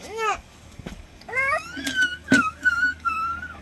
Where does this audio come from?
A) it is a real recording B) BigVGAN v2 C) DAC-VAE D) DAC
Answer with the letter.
D